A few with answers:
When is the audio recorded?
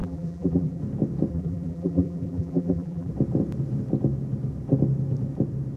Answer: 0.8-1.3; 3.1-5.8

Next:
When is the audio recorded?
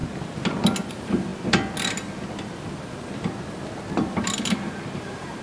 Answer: 0.0-0.9; 1.3-4.5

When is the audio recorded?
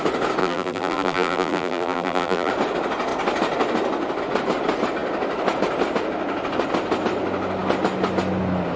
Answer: 0.0-0.4; 2.5-8.8